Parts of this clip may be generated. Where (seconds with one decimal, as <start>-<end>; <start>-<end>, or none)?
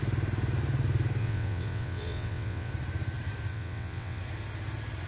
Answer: 1.2-2.7; 3.5-4.2